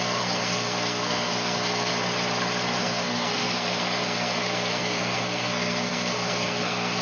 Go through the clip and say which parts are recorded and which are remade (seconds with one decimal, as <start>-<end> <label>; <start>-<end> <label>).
0.0-1.9 remade; 1.9-2.8 recorded; 2.8-7.0 remade